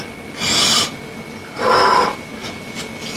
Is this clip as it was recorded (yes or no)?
yes